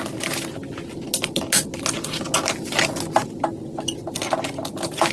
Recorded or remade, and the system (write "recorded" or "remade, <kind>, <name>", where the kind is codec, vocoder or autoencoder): recorded